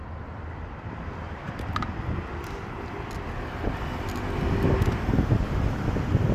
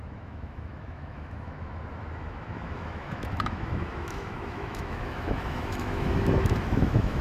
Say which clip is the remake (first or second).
second